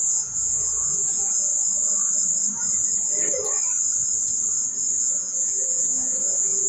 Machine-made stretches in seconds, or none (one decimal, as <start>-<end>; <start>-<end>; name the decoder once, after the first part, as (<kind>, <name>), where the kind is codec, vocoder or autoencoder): 0.0-1.5 (vocoder, Vocos); 5.0-6.7